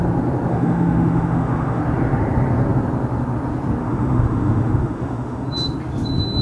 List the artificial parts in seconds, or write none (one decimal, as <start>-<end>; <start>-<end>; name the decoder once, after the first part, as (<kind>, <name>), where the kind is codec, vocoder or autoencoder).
0.5-1.8 (autoencoder, DAC-VAE); 3.8-5.5